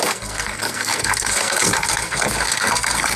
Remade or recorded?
remade